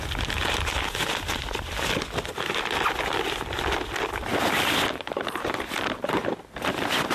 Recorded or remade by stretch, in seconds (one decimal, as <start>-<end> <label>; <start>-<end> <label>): 0.0-4.3 recorded; 4.3-5.2 remade; 5.2-7.1 recorded